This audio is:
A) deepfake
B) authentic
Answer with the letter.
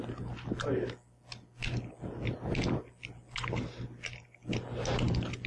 B